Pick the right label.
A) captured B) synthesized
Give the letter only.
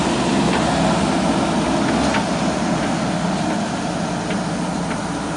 A